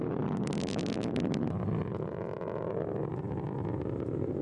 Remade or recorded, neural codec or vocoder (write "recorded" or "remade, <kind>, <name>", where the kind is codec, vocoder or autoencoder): remade, vocoder, BigVGAN v2